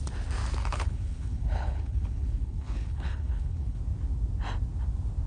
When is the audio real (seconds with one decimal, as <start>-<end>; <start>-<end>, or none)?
0.0-0.6; 3.8-5.3